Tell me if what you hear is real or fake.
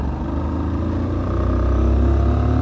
real